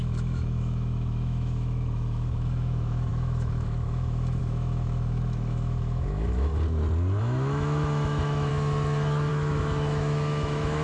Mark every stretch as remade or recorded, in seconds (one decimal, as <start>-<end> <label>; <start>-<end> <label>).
0.0-6.5 remade; 6.5-7.2 recorded; 7.2-8.5 remade; 8.5-9.3 recorded; 9.3-10.8 remade

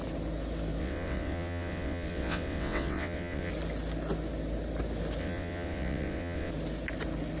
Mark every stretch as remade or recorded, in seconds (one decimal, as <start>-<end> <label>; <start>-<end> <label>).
0.0-0.8 recorded; 0.8-3.5 remade; 3.5-5.2 recorded; 5.2-6.5 remade; 6.5-7.4 recorded

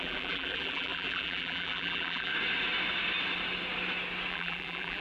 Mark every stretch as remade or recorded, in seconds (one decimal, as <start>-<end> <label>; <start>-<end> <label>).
0.0-2.3 remade; 2.3-4.3 recorded; 4.3-5.0 remade